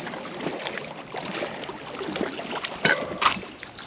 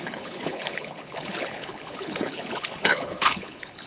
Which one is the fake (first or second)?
second